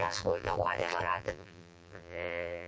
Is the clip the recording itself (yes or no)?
no